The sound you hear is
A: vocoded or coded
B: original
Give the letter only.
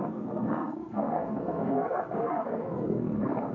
A